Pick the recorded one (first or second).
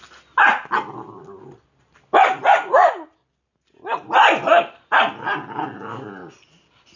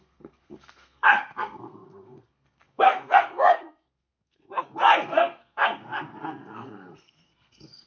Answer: first